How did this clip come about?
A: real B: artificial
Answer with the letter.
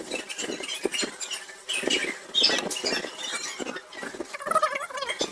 A